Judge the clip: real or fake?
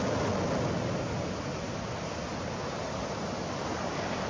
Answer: real